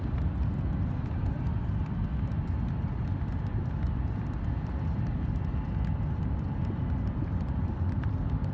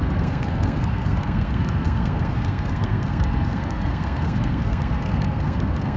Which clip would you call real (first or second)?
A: first